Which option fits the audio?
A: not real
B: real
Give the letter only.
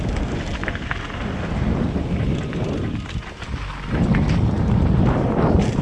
B